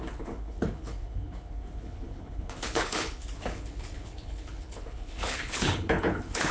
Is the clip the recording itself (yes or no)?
no